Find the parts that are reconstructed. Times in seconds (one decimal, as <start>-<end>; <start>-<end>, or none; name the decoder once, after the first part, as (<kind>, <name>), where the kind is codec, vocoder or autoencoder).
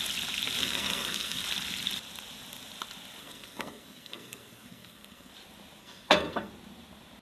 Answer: 0.6-1.4 (codec, SNAC); 3.2-5.3; 5.8-6.5